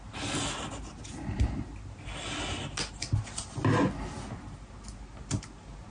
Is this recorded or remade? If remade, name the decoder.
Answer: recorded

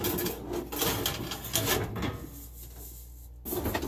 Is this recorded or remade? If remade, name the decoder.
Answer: recorded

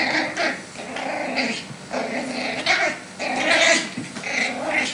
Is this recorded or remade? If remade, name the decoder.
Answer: recorded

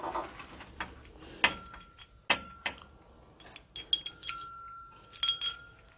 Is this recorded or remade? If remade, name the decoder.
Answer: recorded